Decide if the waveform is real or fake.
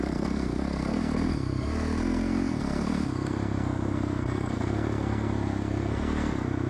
fake